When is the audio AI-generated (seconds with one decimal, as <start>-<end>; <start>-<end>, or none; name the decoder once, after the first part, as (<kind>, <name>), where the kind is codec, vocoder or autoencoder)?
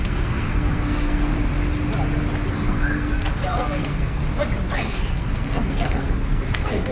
0.0-1.3 (codec, SNAC); 2.5-4.2; 4.7-6.9